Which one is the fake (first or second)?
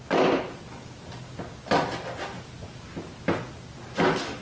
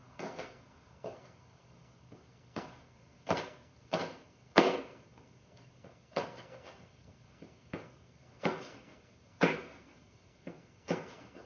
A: second